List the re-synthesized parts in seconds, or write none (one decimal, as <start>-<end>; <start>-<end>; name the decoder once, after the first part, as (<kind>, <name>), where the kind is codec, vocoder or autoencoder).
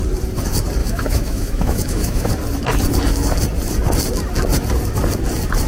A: 0.8-2.3 (autoencoder, DAC-VAE)